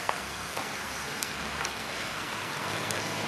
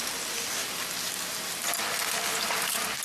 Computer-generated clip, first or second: first